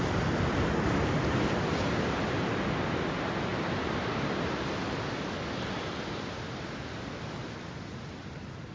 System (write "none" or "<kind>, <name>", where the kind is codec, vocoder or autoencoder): none